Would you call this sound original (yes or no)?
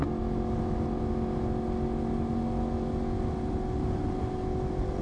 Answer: yes